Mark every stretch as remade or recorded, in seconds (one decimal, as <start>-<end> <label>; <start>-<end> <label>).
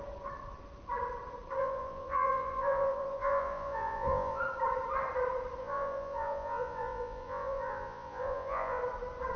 0.0-1.6 recorded; 1.6-4.4 remade; 4.4-5.6 recorded; 5.6-8.8 remade; 8.8-9.4 recorded